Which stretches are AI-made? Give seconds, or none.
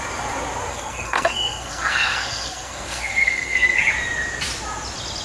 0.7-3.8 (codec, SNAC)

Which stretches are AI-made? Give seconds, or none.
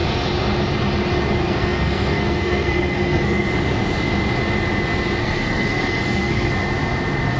1.4-3.5 (codec, SNAC); 5.2-6.5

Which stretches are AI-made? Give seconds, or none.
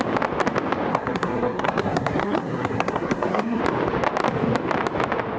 0.9-3.6 (codec, SNAC)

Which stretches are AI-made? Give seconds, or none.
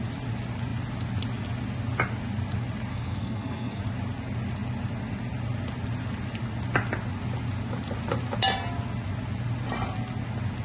2.9-3.8 (codec, SNAC)